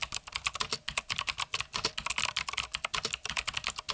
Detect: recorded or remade recorded